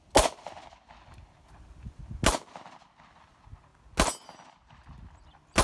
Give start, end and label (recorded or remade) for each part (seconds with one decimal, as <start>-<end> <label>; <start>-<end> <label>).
0.0-5.6 recorded